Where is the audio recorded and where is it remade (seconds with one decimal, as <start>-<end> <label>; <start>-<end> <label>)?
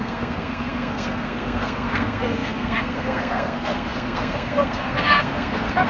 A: 0.0-5.9 remade